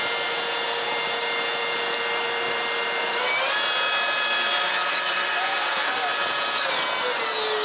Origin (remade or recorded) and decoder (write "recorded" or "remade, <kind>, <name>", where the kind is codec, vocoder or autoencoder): recorded